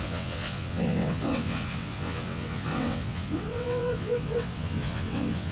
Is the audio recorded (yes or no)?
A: no